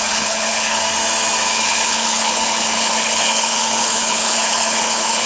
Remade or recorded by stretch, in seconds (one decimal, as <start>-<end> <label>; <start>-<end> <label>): 0.0-0.8 remade; 0.8-1.5 recorded; 1.5-5.3 remade